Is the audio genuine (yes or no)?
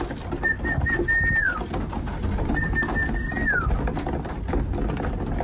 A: yes